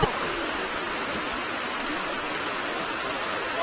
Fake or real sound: real